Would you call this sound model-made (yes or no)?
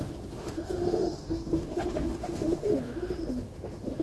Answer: yes